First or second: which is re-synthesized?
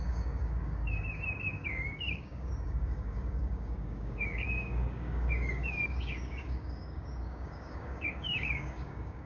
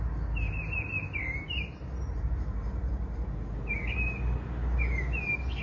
first